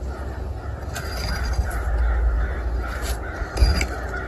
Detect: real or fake real